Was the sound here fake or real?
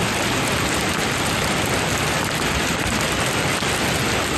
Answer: real